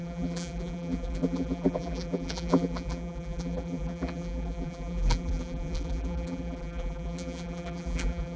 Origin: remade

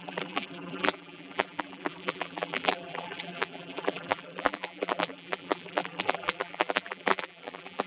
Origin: remade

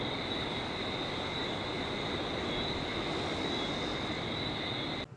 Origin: recorded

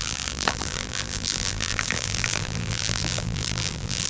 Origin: remade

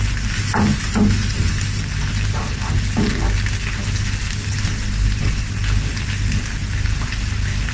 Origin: recorded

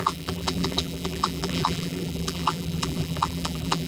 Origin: remade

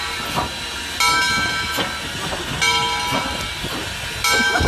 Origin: recorded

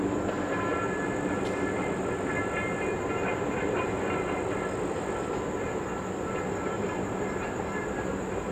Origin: recorded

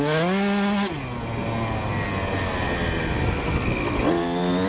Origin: recorded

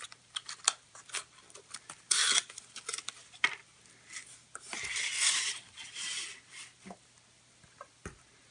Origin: remade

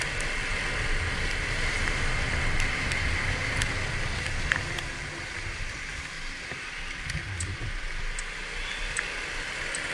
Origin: recorded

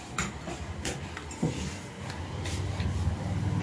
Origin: recorded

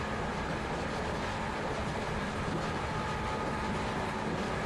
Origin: recorded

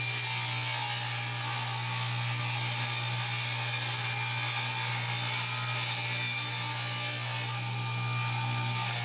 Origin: recorded